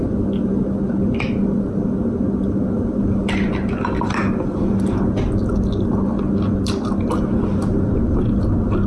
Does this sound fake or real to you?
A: real